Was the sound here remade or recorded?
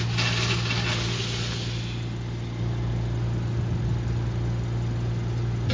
recorded